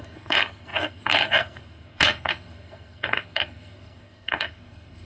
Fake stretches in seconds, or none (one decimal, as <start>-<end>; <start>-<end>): 0.0-5.0

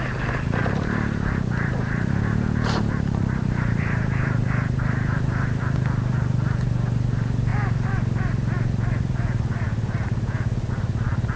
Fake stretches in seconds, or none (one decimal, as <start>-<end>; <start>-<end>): 0.6-5.6

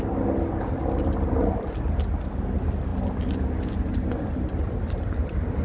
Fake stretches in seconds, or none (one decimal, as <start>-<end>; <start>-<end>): none

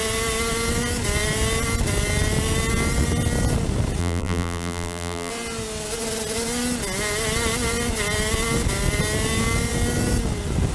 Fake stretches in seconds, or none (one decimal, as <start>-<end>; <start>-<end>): 4.0-5.3

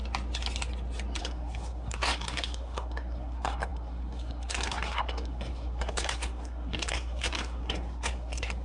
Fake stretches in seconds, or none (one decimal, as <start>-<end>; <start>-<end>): 1.2-8.6